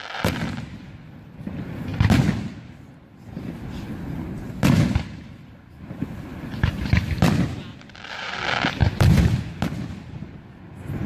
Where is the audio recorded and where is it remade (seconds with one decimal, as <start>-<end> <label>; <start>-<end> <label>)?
0.0-6.3 recorded; 6.3-8.3 remade; 8.3-8.8 recorded; 8.8-9.4 remade; 9.4-11.1 recorded